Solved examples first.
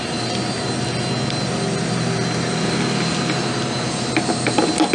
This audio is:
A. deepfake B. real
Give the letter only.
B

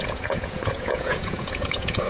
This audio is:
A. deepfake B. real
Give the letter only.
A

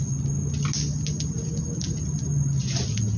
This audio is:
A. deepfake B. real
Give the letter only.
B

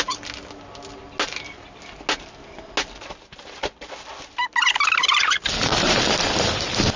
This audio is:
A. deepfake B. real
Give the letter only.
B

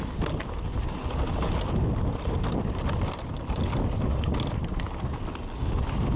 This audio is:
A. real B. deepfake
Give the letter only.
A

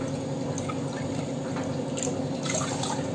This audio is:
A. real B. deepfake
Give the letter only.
A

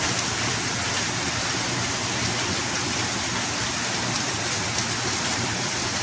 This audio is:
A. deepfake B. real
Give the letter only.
B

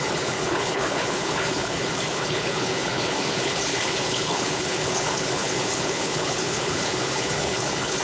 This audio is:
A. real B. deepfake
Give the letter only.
B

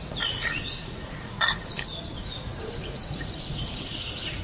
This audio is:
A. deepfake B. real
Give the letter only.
A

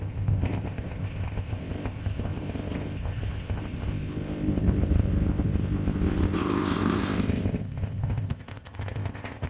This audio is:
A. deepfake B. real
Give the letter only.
A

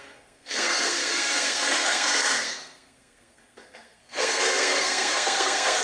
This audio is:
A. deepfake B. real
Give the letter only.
A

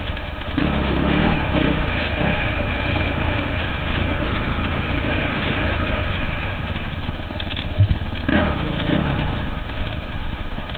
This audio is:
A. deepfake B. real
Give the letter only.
A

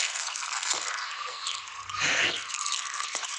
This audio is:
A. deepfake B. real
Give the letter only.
A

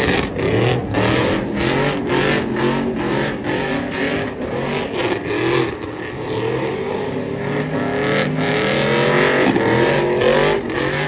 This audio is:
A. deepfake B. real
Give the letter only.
B